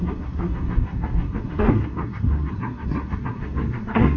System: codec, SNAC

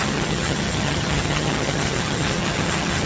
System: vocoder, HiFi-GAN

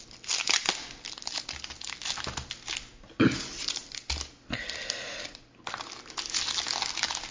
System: none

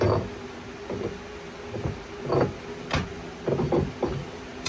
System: none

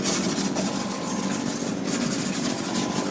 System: none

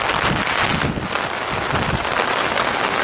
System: none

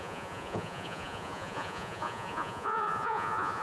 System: vocoder, Vocos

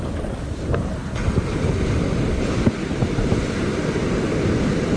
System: none